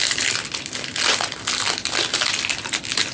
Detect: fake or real real